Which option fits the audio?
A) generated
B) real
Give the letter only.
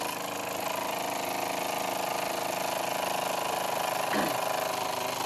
B